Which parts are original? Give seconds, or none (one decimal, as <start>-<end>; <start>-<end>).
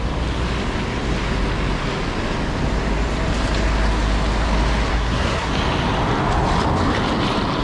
0.0-4.9; 5.5-7.6